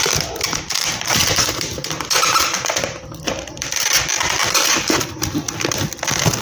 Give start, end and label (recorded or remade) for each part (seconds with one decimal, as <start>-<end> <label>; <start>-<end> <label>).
0.0-0.9 recorded; 0.9-3.7 remade; 3.7-4.4 recorded; 4.4-5.0 remade; 5.0-6.4 recorded